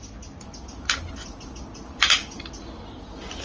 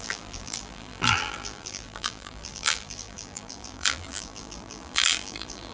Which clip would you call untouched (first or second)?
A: first